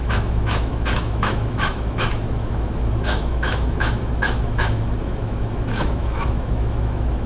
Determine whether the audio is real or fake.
fake